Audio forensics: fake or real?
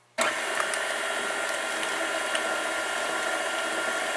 real